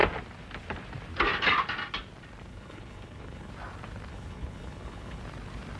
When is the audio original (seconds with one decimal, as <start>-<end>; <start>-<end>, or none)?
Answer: 0.0-2.5; 3.5-4.1; 5.2-5.8